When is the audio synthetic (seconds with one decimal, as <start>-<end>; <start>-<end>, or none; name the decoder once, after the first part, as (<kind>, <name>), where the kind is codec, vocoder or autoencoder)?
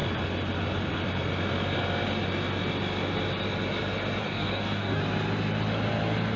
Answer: 4.2-5.0 (codec, DAC)